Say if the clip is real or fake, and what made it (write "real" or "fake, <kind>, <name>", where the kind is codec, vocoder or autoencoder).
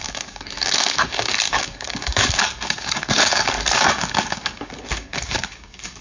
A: fake, codec, DAC